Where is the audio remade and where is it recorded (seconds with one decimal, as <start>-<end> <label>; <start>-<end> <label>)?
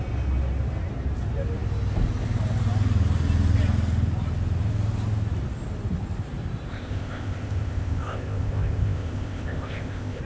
0.0-6.7 recorded; 6.7-10.2 remade